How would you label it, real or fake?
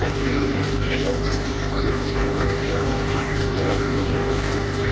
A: fake